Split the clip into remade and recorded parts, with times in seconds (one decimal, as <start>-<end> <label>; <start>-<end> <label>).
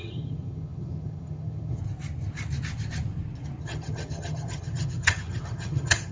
0.0-1.8 remade; 1.8-3.6 recorded; 3.6-6.1 remade